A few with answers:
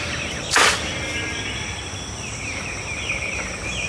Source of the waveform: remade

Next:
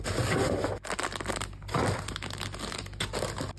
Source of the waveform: recorded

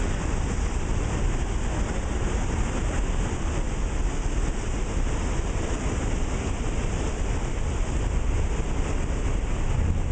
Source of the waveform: recorded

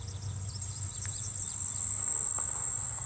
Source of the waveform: recorded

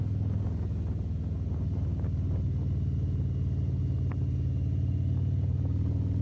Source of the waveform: recorded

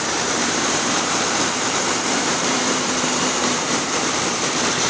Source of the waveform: remade